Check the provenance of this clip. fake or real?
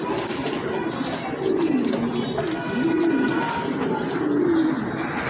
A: real